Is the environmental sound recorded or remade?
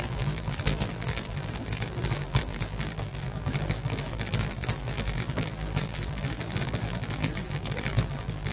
remade